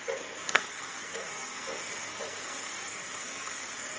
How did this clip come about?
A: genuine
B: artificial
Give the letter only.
B